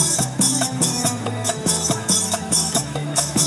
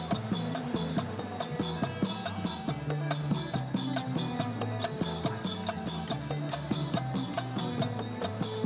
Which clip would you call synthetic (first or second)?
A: first